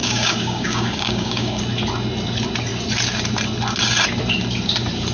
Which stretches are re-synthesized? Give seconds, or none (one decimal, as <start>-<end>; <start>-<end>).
0.0-1.6

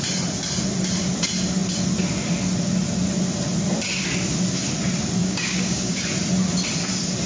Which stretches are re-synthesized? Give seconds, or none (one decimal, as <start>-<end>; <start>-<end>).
5.2-6.0

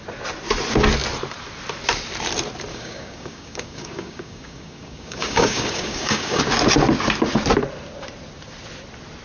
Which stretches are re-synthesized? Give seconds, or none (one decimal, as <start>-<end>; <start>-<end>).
2.7-6.4

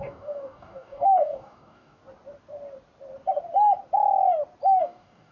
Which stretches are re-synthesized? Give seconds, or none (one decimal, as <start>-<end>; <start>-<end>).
0.0-2.0; 4.8-5.3

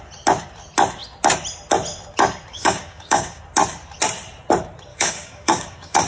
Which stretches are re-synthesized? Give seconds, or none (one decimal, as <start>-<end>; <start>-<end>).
2.5-3.4; 4.9-6.1

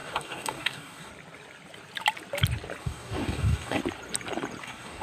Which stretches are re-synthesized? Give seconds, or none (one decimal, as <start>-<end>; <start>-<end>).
0.0-1.1; 2.8-3.8; 4.6-5.0